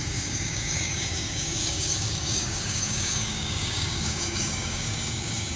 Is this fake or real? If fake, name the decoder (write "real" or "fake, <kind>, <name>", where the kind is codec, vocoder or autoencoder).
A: fake, codec, DAC